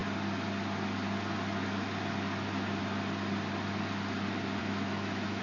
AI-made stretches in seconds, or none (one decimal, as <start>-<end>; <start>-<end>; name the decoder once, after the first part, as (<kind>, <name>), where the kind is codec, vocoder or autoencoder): 4.6-5.4 (autoencoder, DAC-VAE)